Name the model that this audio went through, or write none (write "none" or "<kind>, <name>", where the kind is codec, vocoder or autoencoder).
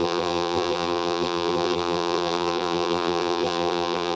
vocoder, BigVGAN v2